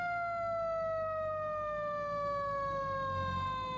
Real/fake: real